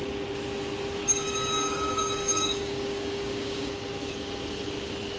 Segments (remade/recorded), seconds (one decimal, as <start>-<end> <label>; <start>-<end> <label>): 0.0-1.0 recorded; 1.0-4.1 remade; 4.1-5.2 recorded